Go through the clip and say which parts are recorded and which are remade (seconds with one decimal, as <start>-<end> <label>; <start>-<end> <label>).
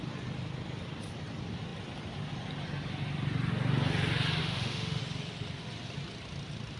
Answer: 0.0-4.4 recorded; 4.4-5.0 remade; 5.0-6.8 recorded